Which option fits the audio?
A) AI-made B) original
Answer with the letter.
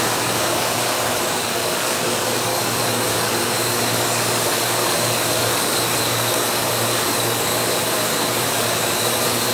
A